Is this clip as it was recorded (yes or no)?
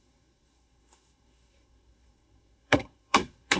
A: no